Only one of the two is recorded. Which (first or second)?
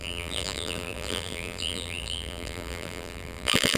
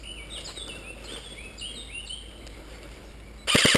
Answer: second